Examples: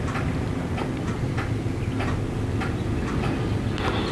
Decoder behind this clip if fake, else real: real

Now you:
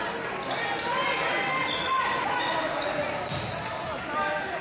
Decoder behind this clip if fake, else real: real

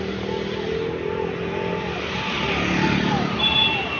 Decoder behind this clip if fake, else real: real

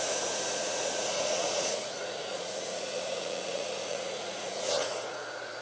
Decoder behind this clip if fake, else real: fake, vocoder, Vocos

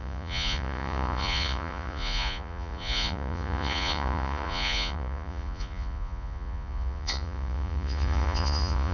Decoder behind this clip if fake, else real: fake, vocoder, Vocos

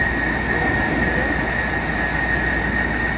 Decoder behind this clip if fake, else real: real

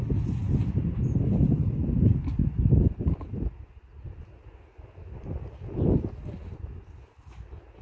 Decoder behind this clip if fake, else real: real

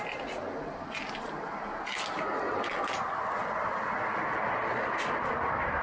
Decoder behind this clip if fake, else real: real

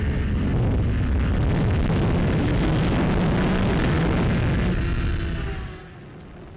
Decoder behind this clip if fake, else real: real